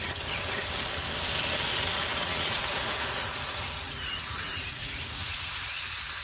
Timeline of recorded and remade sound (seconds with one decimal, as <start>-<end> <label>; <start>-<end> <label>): 0.0-2.1 recorded; 2.1-5.8 remade; 5.8-6.2 recorded